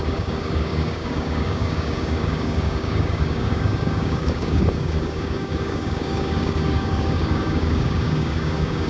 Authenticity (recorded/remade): remade